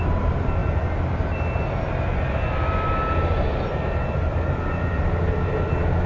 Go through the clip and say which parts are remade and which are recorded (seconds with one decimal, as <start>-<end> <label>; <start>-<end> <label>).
0.0-6.1 recorded

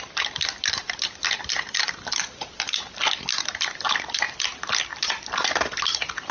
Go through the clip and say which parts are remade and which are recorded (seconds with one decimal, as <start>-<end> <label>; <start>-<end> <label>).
0.0-6.3 recorded

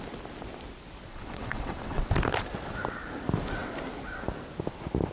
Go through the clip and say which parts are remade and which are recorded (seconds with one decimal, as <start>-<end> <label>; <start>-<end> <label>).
0.0-1.1 recorded; 1.1-2.1 remade; 2.1-5.1 recorded

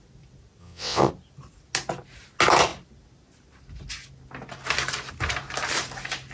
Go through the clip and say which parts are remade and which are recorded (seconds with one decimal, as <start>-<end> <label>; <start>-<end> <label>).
0.0-0.6 recorded; 0.6-1.1 remade; 1.1-6.3 recorded